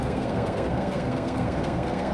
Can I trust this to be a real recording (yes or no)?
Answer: no